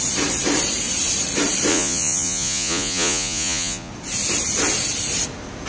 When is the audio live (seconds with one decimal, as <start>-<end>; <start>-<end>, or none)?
0.0-1.7; 3.9-5.7